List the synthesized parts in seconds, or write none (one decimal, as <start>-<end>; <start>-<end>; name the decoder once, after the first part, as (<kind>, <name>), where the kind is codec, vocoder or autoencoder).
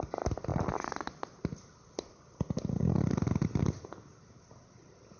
none